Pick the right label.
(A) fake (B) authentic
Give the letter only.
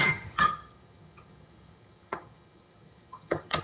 A